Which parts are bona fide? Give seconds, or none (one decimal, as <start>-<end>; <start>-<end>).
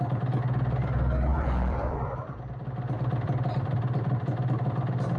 0.0-1.3; 2.4-3.1; 4.1-5.2